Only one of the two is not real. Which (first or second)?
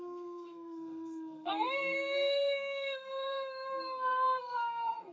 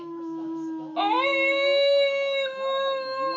first